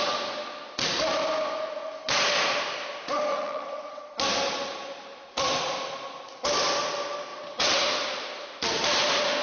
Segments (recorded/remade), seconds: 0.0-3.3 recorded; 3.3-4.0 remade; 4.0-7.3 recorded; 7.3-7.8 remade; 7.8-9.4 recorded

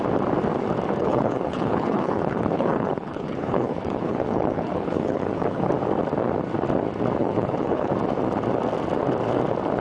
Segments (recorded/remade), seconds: 0.0-1.0 recorded; 1.0-5.7 remade; 5.7-7.2 recorded; 7.2-7.9 remade; 7.9-9.8 recorded

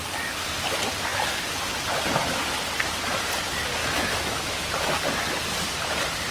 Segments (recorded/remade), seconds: 0.0-3.8 recorded; 3.8-4.7 remade; 4.7-6.3 recorded

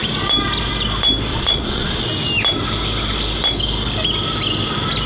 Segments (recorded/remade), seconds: 0.0-1.3 recorded; 1.3-2.1 remade; 2.1-5.1 recorded

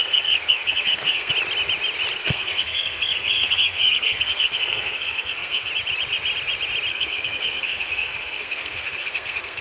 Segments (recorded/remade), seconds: 0.0-1.3 remade; 1.3-2.2 recorded; 2.2-5.7 remade; 5.7-6.9 recorded; 6.9-9.6 remade

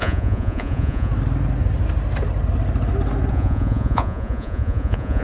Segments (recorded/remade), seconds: 0.0-1.1 remade; 1.1-3.3 recorded; 3.3-5.2 remade

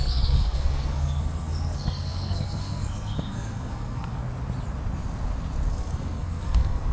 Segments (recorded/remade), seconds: 0.0-4.2 remade; 4.2-5.7 recorded; 5.7-6.9 remade

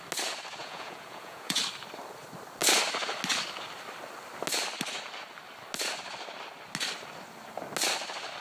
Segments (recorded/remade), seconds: 0.0-0.6 recorded; 0.6-1.6 remade; 1.6-8.4 recorded